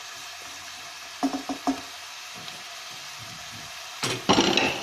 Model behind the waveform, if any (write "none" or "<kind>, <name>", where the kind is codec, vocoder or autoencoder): none